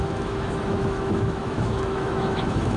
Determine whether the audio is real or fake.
fake